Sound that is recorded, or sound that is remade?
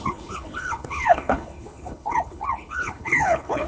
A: remade